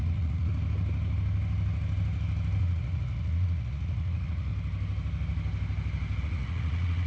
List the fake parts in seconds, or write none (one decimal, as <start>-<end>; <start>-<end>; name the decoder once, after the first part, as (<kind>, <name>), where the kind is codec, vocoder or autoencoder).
0.0-0.5 (vocoder, Vocos); 2.6-4.5; 6.2-7.1